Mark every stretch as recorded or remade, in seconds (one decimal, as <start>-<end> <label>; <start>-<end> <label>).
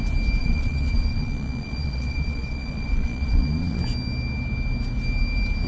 0.0-0.4 recorded; 0.4-3.8 remade; 3.8-5.7 recorded